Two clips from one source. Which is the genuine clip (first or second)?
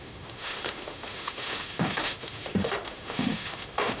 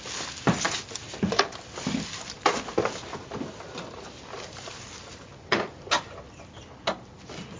second